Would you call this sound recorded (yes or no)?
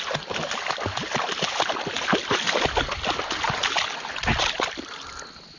yes